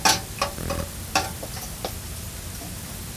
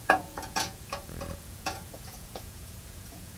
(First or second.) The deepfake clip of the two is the second